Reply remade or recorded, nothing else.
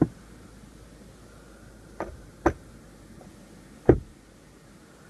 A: recorded